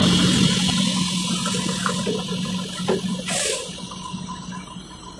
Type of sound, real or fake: real